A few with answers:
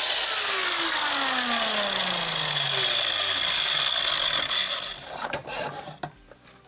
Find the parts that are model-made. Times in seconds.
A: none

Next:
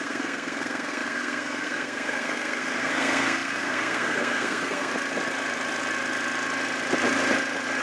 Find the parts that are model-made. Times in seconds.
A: 0.0-4.9 (codec, SNAC)

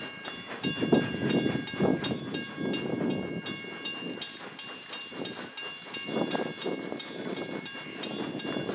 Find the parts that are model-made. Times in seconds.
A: none

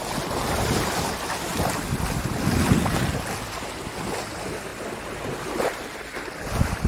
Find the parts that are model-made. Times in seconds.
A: none

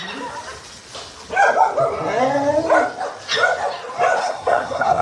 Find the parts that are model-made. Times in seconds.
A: 4.2-5.0 (codec, SNAC)

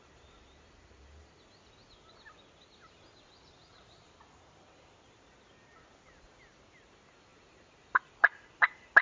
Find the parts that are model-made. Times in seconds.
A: none

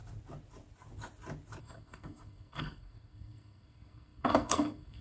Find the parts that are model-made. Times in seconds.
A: 1.6-5.0 (codec, SNAC)